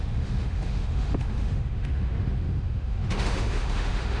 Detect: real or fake fake